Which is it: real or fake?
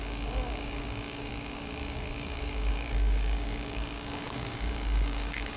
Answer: fake